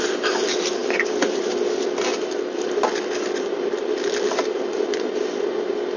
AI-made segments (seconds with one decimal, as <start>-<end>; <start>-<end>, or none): none

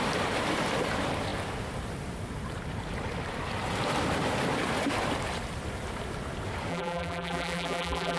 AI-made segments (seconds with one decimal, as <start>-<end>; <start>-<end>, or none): 6.7-8.2